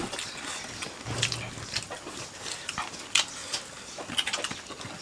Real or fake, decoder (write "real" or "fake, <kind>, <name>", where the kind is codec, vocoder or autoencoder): real